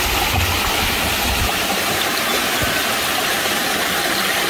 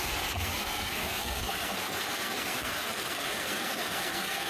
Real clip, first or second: first